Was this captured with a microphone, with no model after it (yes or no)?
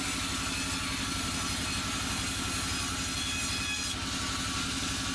yes